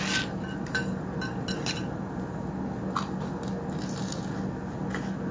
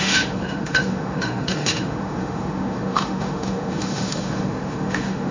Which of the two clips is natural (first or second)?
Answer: first